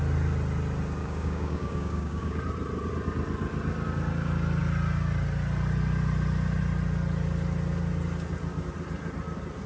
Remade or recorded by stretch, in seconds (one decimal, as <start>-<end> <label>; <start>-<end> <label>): 0.0-1.0 recorded; 1.0-2.4 remade; 2.4-9.7 recorded